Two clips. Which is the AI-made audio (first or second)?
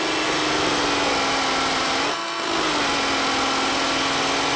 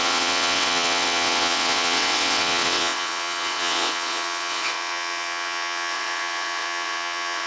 second